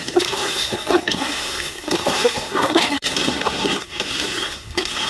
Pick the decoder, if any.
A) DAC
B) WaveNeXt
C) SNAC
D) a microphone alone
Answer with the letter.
C